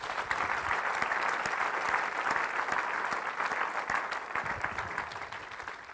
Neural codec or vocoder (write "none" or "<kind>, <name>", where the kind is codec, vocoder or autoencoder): none